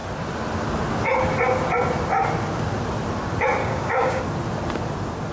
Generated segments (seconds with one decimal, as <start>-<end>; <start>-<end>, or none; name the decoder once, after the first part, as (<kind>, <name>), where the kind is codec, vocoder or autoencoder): 3.6-4.2 (codec, DAC)

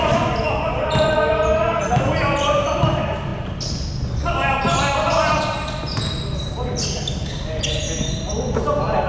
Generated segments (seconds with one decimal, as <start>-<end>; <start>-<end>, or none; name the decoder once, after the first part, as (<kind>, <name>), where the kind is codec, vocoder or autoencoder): none

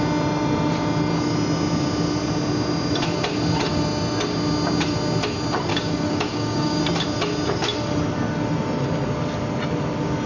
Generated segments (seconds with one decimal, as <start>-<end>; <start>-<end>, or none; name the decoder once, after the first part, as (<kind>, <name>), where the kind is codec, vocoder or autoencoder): 5.7-6.8 (codec, DAC)

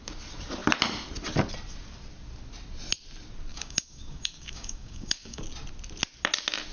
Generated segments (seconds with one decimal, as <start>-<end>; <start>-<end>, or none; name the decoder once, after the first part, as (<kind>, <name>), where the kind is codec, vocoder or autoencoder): 3.5-5.4 (codec, DAC)

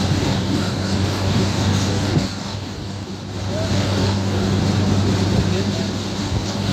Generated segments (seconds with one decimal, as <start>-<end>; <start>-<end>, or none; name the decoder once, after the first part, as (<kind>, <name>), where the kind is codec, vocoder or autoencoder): 0.0-3.1 (codec, DAC); 3.7-4.6; 6.2-6.7